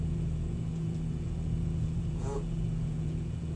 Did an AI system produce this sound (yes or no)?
yes